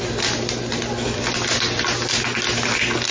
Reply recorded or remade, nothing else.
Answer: recorded